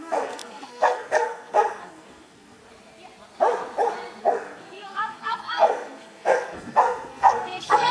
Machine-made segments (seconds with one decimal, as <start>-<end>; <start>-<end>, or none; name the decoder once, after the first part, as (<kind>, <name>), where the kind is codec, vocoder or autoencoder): 0.0-2.6 (codec, SNAC); 4.2-7.9

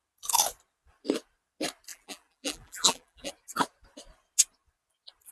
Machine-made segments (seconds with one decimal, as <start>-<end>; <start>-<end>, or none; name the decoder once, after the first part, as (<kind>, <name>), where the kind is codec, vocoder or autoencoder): 1.9-3.3 (vocoder, BigVGAN v2)

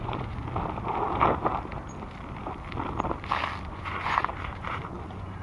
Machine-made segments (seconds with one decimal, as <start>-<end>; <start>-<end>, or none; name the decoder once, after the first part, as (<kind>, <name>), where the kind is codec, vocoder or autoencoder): 0.0-0.4 (vocoder, Vocos); 3.6-5.4

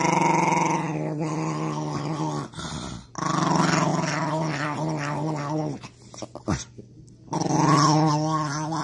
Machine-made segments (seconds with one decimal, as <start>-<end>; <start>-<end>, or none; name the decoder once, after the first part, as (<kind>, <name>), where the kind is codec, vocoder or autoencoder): none

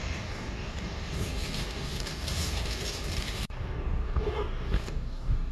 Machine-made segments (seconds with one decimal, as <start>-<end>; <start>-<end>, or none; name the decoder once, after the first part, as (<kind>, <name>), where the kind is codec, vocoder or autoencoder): 0.0-5.5 (codec, DAC)

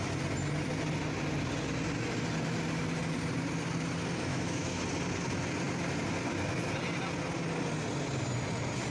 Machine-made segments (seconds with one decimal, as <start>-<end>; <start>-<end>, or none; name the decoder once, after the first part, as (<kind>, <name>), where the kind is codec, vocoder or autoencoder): 4.3-4.8 (autoencoder, DAC-VAE)

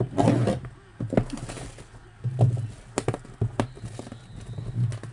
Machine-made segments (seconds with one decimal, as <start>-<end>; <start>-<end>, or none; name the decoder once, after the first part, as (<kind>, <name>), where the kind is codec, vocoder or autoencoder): none